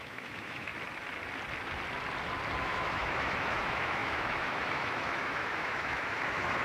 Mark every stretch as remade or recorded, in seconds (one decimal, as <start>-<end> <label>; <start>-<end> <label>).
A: 0.0-0.7 remade; 0.7-2.6 recorded; 2.6-6.6 remade